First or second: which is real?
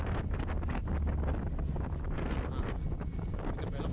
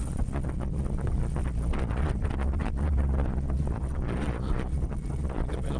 first